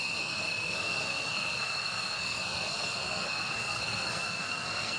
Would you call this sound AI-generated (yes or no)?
yes